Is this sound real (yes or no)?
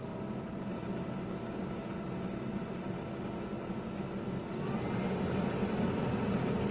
yes